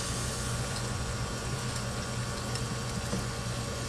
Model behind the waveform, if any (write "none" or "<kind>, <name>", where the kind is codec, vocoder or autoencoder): vocoder, Vocos